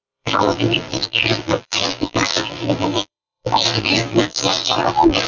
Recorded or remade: remade